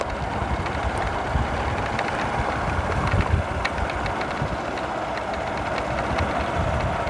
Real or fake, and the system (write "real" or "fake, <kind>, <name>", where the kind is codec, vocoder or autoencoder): real